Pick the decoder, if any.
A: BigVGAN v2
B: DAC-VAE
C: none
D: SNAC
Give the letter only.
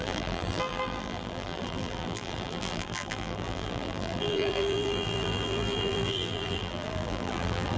A